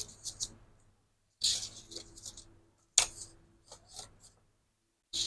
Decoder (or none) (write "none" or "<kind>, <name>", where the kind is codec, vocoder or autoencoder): none